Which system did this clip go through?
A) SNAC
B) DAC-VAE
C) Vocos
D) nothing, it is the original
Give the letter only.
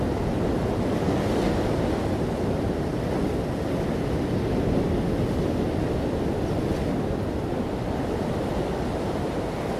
D